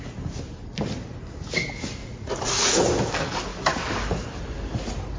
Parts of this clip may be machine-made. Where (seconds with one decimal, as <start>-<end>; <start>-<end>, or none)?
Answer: 2.0-2.8